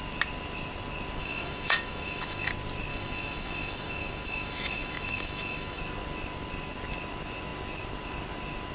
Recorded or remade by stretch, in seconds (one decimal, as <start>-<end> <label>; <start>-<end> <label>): 0.0-1.2 recorded; 1.2-2.5 remade; 2.5-2.9 recorded; 2.9-5.8 remade; 5.8-8.7 recorded